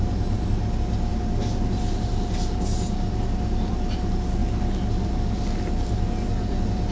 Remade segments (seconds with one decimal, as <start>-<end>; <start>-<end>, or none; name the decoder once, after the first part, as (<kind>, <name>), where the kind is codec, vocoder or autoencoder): none